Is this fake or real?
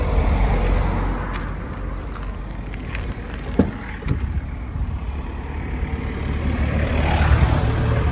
real